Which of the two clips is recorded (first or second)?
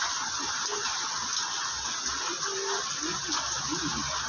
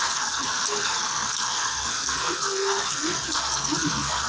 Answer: first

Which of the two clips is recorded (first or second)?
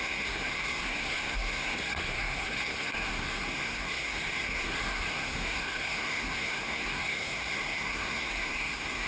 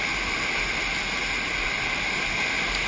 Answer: second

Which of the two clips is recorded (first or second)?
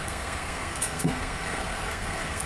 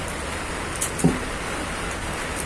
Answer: second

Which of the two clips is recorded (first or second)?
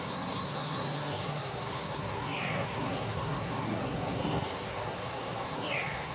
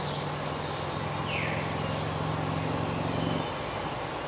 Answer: second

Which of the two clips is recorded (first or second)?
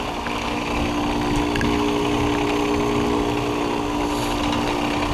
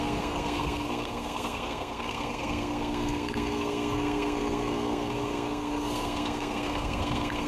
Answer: first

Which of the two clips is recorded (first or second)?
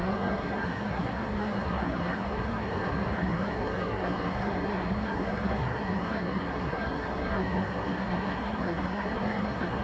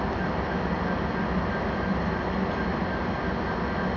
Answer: second